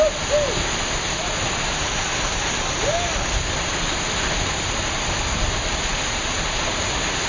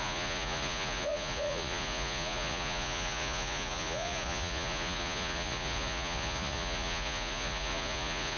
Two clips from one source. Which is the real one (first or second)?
first